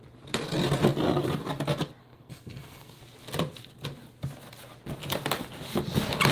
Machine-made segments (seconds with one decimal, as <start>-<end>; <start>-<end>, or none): 2.0-3.0